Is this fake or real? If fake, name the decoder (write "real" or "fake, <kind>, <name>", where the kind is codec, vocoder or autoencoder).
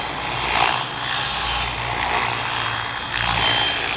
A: real